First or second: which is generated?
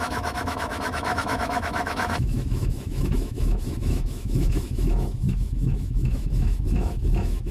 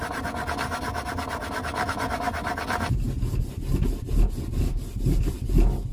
first